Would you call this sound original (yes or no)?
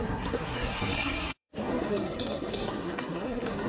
no